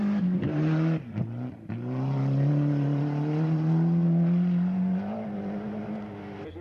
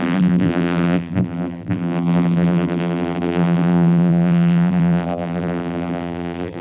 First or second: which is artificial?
second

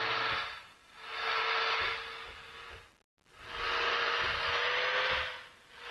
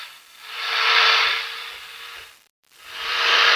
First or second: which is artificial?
second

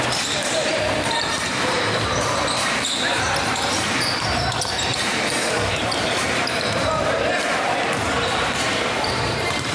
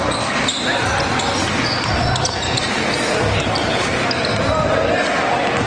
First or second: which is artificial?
first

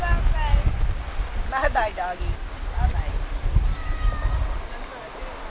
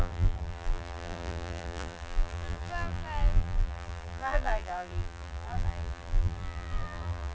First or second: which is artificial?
second